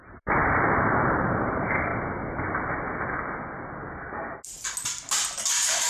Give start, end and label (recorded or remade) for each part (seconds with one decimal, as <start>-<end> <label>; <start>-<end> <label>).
0.0-1.9 remade; 1.9-5.4 recorded; 5.4-5.9 remade